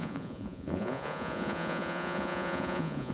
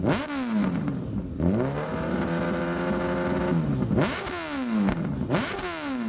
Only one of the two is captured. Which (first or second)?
second